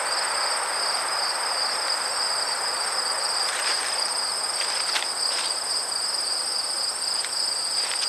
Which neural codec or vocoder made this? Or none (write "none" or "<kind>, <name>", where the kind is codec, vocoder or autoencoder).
none